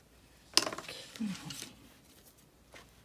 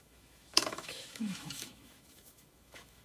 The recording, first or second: first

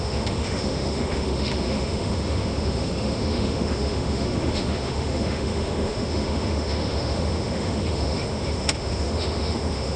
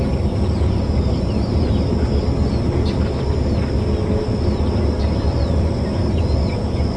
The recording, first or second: second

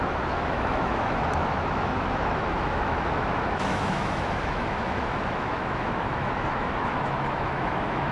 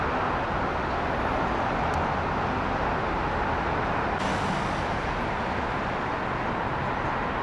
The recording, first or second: second